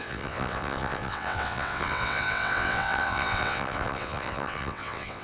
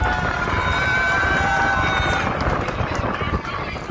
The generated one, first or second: first